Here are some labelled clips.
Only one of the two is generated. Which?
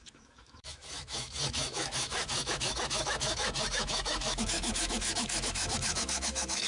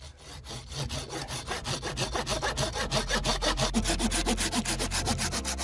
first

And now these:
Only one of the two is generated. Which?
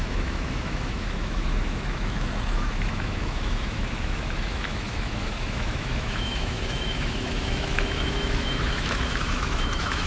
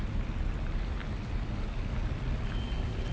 first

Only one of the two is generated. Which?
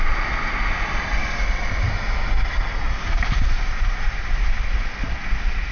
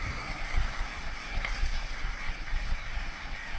second